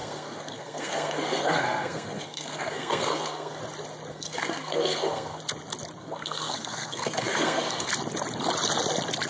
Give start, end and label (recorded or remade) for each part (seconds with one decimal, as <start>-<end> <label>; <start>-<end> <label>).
0.0-3.6 remade; 3.6-4.1 recorded; 4.1-5.4 remade; 5.4-6.0 recorded; 6.0-7.9 remade; 7.9-9.3 recorded